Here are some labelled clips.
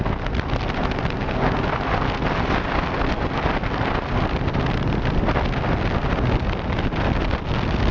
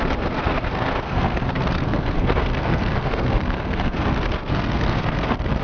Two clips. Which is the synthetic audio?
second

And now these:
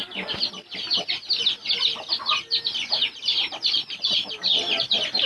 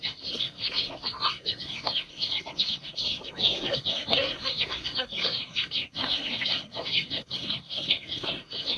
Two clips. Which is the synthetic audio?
second